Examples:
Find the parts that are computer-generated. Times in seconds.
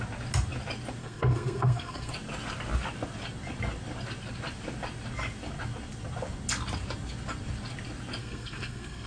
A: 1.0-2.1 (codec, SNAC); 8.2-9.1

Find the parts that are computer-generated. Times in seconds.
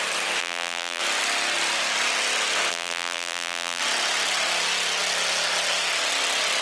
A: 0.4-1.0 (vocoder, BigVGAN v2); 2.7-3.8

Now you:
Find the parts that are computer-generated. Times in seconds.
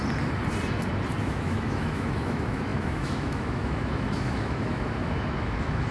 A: 1.2-5.9 (autoencoder, DAC-VAE)